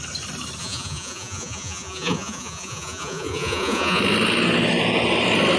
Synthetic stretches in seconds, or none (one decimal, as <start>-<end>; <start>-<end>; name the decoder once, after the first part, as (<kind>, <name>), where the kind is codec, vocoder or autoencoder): 0.6-4.0 (vocoder, Vocos)